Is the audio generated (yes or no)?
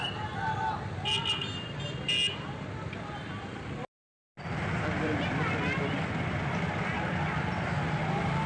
no